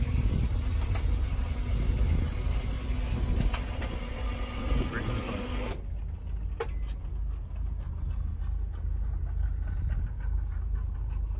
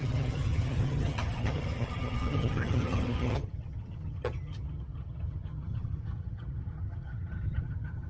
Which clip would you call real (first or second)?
first